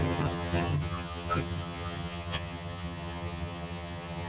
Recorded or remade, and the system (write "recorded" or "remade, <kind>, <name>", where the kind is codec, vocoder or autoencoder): remade, vocoder, HiFi-GAN